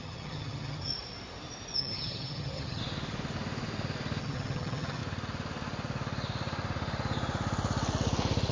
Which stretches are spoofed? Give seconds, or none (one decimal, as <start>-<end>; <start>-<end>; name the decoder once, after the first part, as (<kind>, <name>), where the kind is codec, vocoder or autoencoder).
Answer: 0.0-0.9 (vocoder, HiFi-GAN); 1.8-2.8; 4.2-5.0

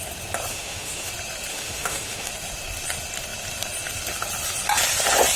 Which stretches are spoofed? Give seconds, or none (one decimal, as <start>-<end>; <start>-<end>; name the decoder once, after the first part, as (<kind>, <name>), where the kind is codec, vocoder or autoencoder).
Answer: 0.5-1.1 (autoencoder, DAC-VAE); 1.5-2.3